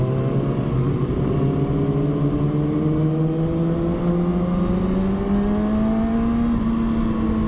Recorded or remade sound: recorded